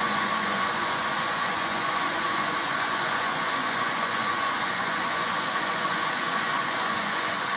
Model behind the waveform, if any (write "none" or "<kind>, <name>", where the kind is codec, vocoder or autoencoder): vocoder, Vocos